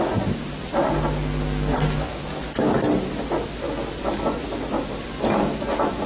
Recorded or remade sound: recorded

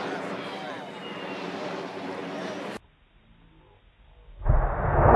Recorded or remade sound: recorded